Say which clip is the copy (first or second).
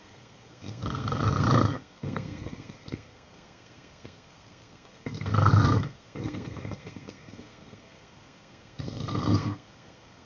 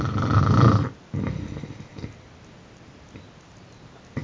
first